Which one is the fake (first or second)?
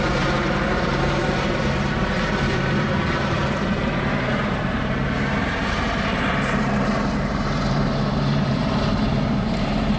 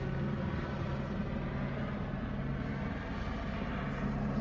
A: first